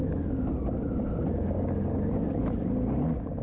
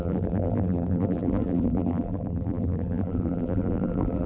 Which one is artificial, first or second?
second